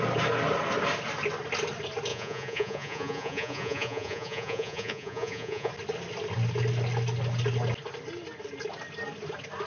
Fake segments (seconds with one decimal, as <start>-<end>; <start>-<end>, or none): 2.1-5.7